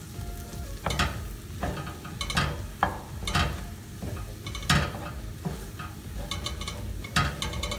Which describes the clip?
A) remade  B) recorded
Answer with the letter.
B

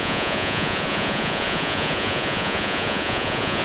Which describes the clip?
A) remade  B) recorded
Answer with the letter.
A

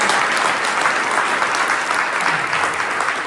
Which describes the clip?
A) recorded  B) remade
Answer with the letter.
A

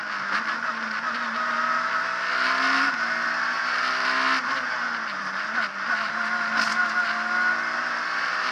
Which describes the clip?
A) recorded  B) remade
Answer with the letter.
A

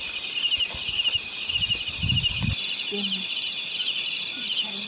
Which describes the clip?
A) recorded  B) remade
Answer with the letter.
A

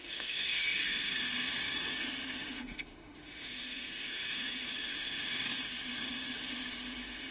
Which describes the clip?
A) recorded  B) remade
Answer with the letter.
B